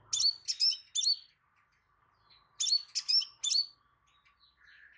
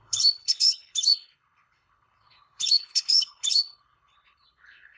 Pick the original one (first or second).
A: first